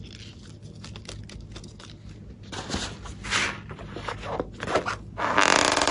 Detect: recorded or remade recorded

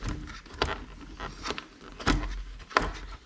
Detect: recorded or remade recorded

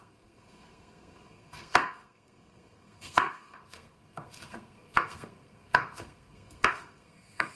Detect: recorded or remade remade